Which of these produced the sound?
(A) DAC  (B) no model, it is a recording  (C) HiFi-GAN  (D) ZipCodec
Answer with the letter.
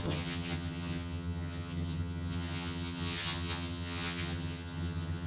C